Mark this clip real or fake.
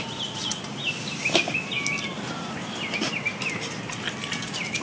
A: real